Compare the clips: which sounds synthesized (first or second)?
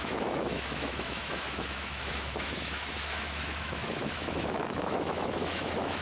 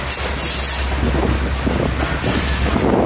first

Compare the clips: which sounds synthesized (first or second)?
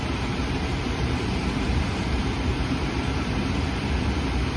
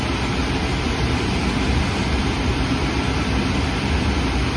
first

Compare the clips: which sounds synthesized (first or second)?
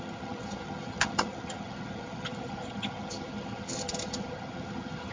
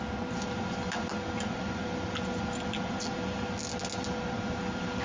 first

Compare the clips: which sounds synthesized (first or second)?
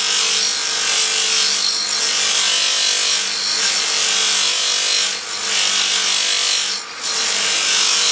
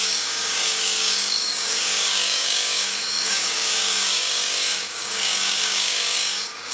second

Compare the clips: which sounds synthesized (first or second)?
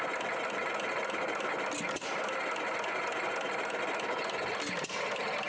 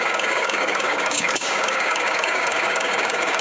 second